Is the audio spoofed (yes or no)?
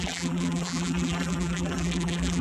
yes